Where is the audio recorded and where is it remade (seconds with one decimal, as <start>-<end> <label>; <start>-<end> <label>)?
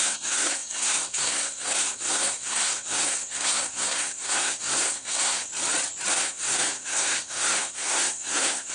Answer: 0.0-5.5 remade; 5.5-6.1 recorded; 6.1-8.7 remade